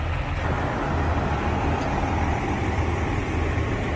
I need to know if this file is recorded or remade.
recorded